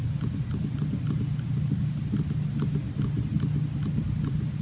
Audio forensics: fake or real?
real